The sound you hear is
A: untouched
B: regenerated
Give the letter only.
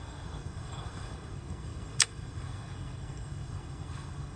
B